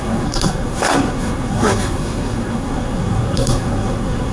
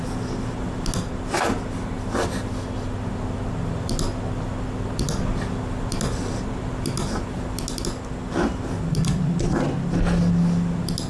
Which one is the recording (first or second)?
second